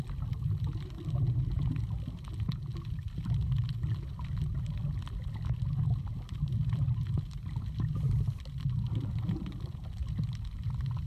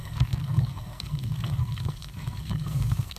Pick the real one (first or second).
first